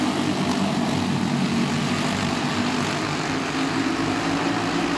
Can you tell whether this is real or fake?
real